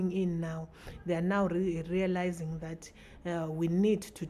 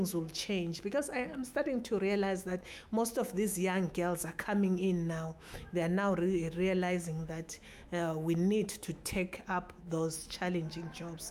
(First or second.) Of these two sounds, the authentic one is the first